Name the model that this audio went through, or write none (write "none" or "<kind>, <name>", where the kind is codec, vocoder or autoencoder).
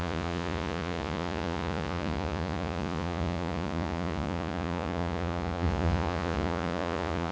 vocoder, Vocos